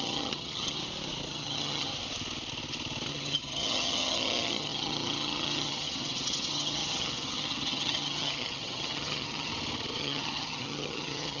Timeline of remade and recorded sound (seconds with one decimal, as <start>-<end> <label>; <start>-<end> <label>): 0.0-0.8 remade; 0.8-1.3 recorded; 1.3-1.9 remade; 1.9-3.1 recorded; 3.1-9.5 remade; 9.5-10.0 recorded; 10.0-11.4 remade